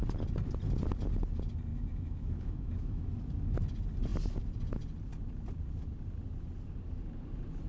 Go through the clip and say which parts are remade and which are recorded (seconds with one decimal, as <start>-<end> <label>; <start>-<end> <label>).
0.0-1.7 recorded; 1.7-3.1 remade; 3.1-7.7 recorded